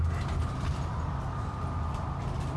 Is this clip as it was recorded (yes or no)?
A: yes